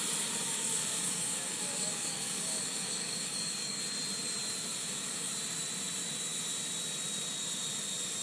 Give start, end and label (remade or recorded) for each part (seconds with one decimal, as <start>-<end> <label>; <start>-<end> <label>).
0.0-0.4 recorded; 0.4-3.8 remade; 3.8-4.7 recorded; 4.7-5.3 remade; 5.3-8.2 recorded